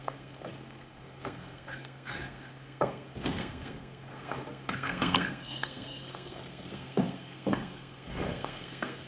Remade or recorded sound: remade